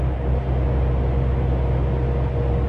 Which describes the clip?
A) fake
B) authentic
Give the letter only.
B